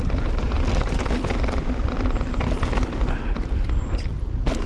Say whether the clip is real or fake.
fake